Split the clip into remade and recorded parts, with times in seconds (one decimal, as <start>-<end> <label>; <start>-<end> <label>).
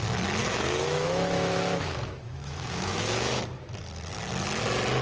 0.0-0.4 recorded; 0.4-3.4 remade; 3.4-5.0 recorded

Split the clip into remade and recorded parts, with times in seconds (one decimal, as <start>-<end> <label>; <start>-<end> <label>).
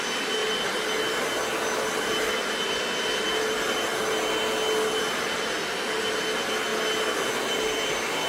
0.0-8.3 recorded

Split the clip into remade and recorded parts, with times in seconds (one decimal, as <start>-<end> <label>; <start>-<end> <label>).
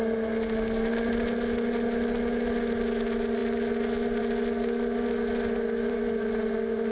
0.0-6.9 recorded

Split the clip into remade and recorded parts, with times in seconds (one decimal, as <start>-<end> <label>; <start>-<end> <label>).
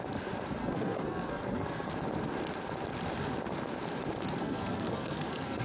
0.0-0.6 recorded; 0.6-1.9 remade; 1.9-4.4 recorded; 4.4-5.6 remade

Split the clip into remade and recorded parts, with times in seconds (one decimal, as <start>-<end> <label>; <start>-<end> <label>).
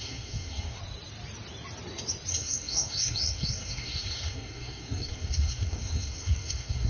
0.0-0.8 remade; 0.8-2.3 recorded; 2.3-6.9 remade